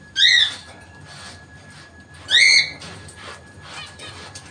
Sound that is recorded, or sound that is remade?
remade